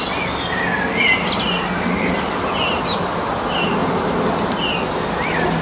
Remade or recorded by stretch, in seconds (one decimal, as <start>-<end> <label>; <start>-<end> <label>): 0.0-5.6 recorded